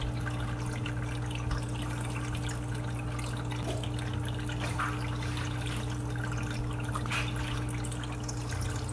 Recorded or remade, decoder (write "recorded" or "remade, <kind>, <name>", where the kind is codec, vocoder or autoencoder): recorded